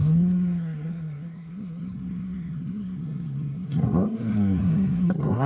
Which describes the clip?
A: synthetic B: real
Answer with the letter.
A